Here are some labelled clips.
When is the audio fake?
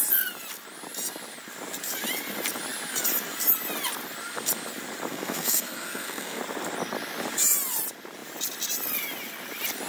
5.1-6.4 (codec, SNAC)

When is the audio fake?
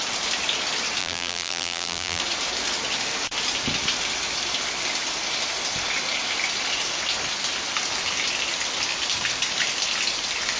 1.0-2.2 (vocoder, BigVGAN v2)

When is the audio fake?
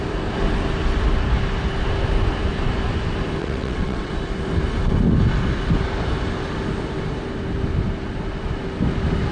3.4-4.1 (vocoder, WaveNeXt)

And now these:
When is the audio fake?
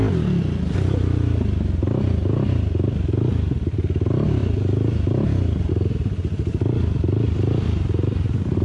none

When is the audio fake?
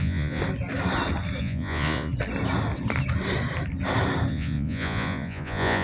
0.0-0.4 (vocoder, Vocos); 1.4-2.1; 4.3-5.8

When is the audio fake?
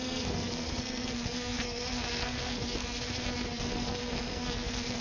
0.0-5.0 (codec, SNAC)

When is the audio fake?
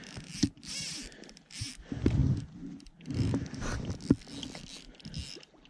none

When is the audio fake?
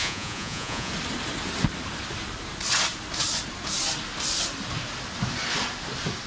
0.0-0.9 (vocoder, Vocos)